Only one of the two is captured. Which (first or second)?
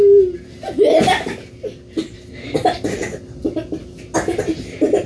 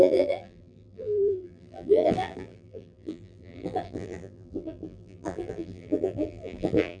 first